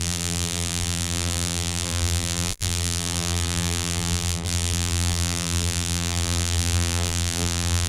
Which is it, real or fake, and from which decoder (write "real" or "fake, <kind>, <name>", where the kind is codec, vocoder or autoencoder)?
fake, vocoder, BigVGAN v2